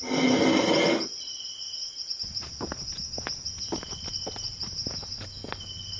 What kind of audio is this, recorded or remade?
recorded